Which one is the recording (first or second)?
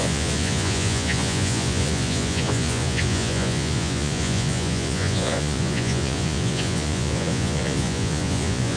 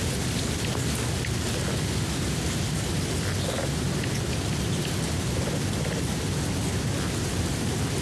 second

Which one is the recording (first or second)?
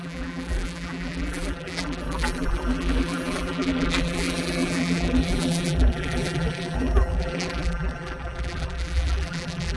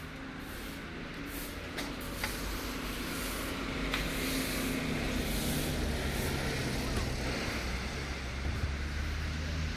second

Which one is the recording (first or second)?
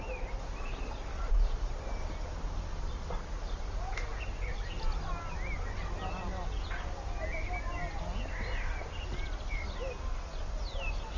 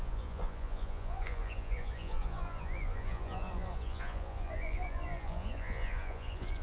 first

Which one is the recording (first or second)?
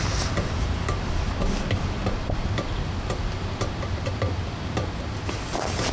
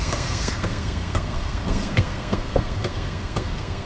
first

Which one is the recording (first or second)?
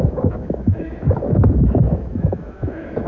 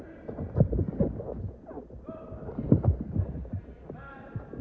second